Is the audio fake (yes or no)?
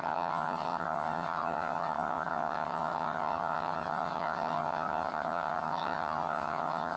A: yes